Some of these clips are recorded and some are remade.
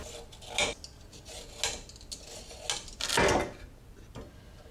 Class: recorded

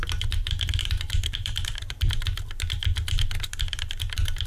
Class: remade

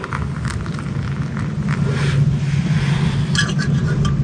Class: recorded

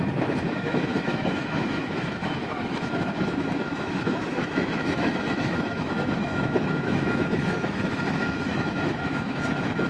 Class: remade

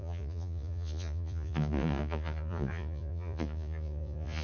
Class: remade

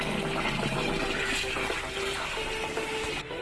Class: recorded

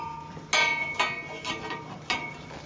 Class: recorded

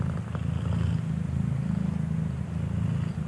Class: recorded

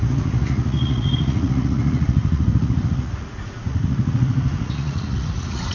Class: remade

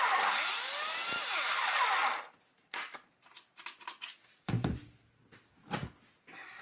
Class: recorded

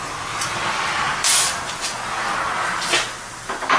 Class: recorded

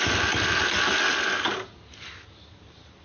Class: recorded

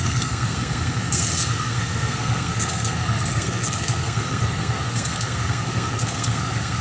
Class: remade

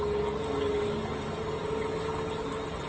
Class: recorded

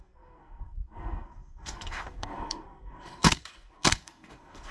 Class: remade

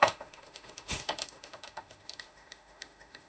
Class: remade